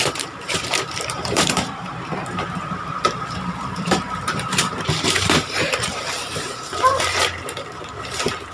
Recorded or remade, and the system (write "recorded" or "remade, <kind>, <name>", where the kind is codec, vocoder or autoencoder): remade, vocoder, BigVGAN v2